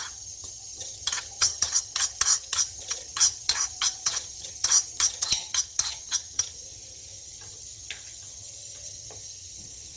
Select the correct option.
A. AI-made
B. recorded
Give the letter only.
A